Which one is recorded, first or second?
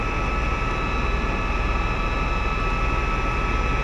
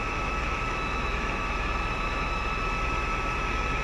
first